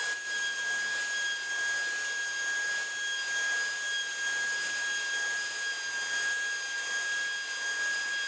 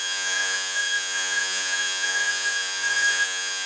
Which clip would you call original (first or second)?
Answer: first